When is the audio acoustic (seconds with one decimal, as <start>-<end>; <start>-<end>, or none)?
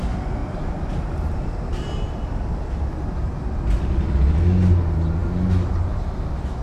0.0-0.4; 2.9-6.6